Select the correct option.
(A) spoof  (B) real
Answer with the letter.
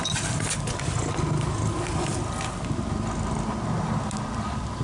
B